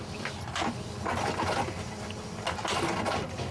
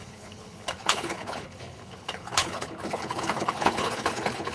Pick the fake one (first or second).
second